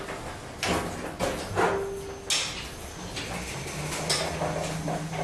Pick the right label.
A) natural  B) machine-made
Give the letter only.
A